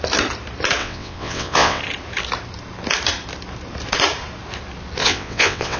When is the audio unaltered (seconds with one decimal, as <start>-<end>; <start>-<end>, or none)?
0.0-0.8; 1.8-5.0